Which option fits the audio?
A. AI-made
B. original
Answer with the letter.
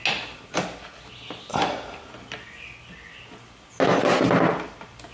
B